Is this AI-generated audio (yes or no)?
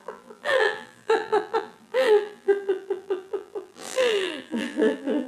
yes